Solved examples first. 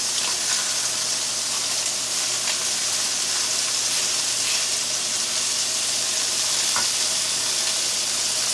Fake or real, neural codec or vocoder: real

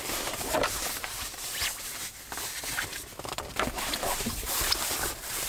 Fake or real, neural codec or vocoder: fake, vocoder, BigVGAN v2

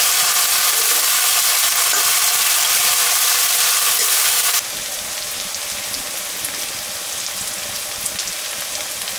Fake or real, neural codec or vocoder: real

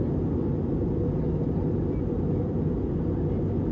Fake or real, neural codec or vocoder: real